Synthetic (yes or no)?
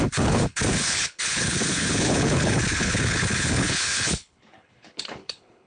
yes